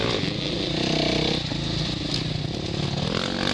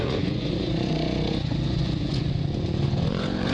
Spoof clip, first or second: second